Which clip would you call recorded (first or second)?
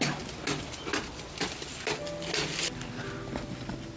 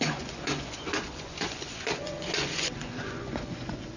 first